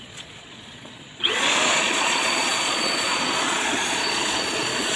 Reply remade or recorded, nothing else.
remade